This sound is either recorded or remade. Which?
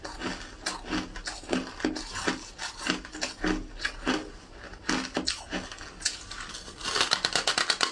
recorded